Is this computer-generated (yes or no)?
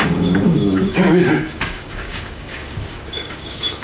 yes